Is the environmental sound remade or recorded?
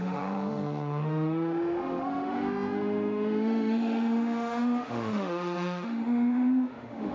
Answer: remade